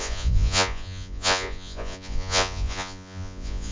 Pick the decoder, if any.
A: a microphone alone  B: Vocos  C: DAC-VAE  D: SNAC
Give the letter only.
B